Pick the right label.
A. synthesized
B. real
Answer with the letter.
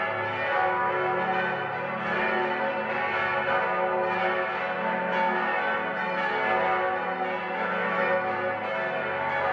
B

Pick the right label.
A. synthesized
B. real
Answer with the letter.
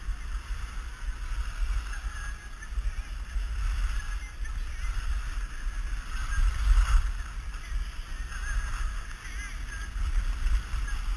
B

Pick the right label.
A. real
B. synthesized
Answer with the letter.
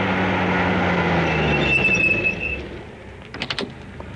A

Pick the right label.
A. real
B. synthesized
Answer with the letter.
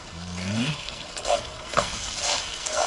B